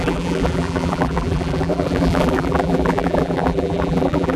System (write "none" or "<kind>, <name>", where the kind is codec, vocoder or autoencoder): vocoder, BigVGAN v2